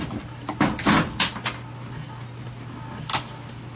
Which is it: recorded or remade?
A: recorded